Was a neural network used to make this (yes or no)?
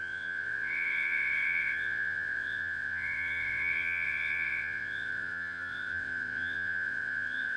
yes